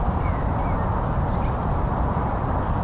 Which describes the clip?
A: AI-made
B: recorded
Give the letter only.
B